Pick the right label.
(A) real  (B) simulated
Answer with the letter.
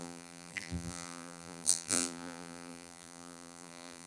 B